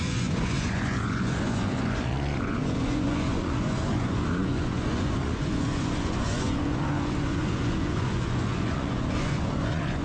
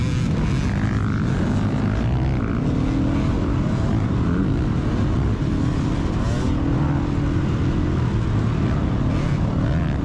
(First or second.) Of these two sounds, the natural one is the second